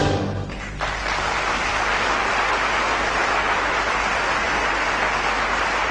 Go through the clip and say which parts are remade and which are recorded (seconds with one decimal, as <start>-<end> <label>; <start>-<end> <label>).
0.0-3.2 recorded; 3.2-3.7 remade; 3.7-5.9 recorded